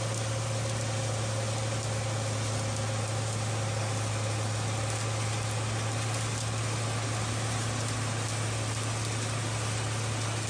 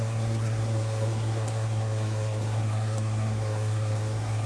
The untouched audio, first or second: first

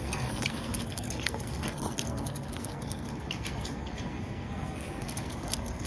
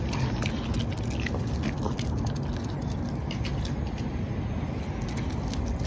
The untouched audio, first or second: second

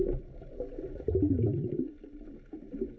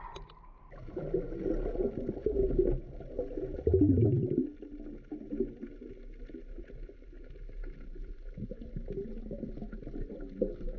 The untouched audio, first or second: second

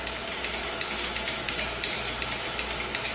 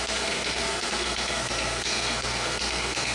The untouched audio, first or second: first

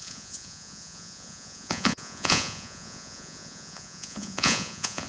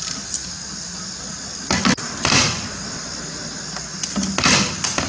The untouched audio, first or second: second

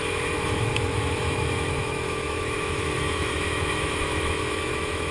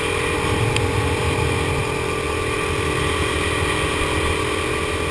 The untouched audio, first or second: second